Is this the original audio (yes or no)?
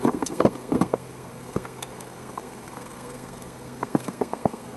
no